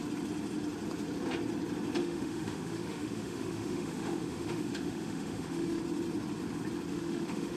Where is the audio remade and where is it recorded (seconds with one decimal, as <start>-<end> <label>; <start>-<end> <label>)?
0.0-2.0 recorded; 2.0-5.8 remade; 5.8-6.9 recorded; 6.9-7.6 remade